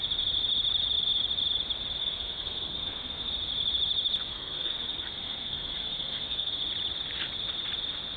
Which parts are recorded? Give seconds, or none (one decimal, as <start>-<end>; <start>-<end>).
0.0-2.0; 3.3-4.3; 6.5-8.2